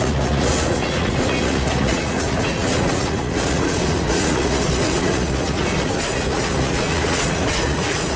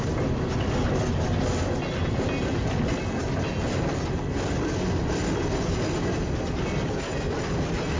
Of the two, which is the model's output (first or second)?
first